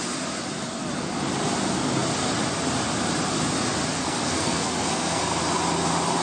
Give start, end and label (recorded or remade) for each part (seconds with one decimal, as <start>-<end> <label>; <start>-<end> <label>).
0.0-4.0 recorded; 4.0-5.2 remade; 5.2-6.2 recorded